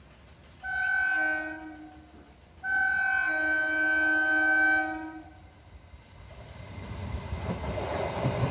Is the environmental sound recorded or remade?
recorded